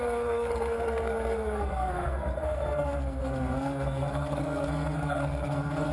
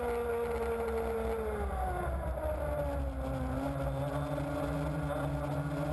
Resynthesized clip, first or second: first